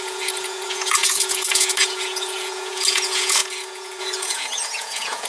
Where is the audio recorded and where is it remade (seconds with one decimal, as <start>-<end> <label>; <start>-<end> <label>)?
0.0-5.3 remade

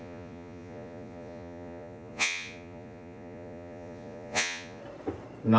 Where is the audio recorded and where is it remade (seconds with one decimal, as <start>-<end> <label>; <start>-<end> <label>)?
0.0-4.8 remade; 4.8-5.6 recorded

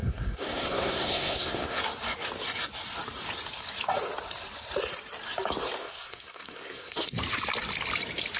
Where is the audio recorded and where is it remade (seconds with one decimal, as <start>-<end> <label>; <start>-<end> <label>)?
0.0-1.8 remade; 1.8-5.8 recorded; 5.8-7.2 remade; 7.2-8.4 recorded

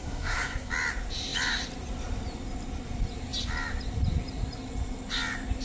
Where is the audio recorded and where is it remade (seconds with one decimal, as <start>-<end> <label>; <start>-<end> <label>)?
0.0-0.7 remade; 0.7-5.6 recorded

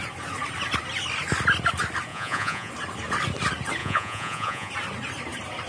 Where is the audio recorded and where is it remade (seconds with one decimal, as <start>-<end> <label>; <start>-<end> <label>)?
0.0-2.1 recorded; 2.1-2.7 remade; 2.7-3.8 recorded; 3.8-4.7 remade; 4.7-5.7 recorded

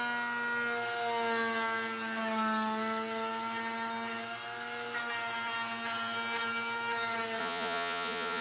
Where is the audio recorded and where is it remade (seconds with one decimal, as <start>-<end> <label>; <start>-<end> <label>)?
0.0-7.4 recorded; 7.4-8.4 remade

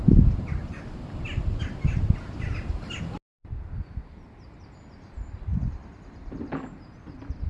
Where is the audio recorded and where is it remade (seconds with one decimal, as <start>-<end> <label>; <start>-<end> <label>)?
0.0-7.5 recorded